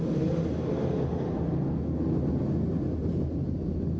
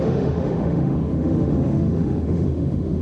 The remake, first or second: second